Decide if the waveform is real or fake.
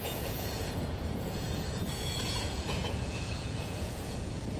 fake